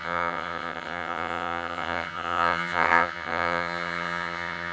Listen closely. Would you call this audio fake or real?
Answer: fake